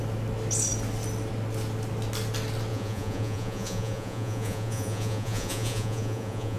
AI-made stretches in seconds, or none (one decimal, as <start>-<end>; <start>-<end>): 2.7-6.6